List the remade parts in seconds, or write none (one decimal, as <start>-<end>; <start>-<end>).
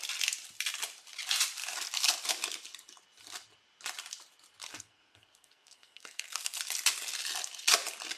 4.7-6.6